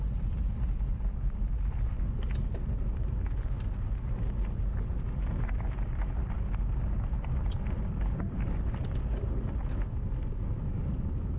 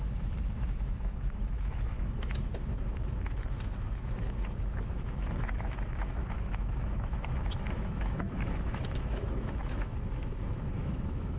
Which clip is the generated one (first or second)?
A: second